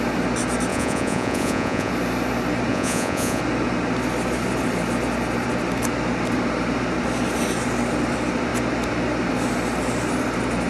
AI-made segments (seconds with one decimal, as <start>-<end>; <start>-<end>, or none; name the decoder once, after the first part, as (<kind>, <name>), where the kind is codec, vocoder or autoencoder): 0.7-1.9 (vocoder, Vocos); 2.7-3.4